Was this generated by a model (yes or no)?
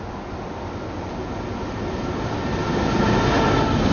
no